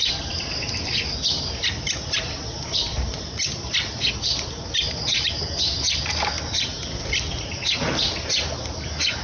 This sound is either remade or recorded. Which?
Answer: recorded